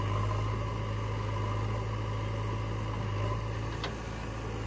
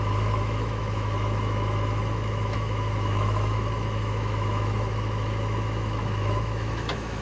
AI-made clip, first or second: second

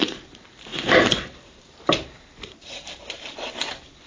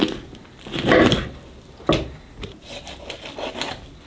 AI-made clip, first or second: first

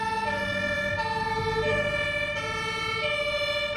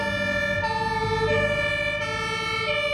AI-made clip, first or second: first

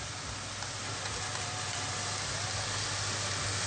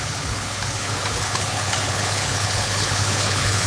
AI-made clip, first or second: second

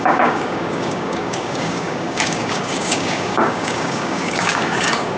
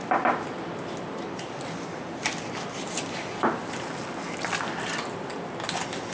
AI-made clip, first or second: first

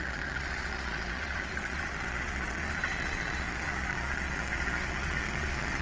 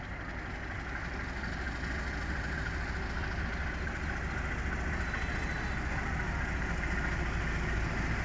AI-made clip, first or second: first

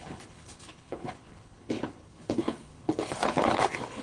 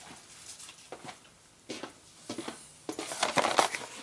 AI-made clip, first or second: first